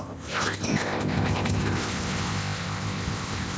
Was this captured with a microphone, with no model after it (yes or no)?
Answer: no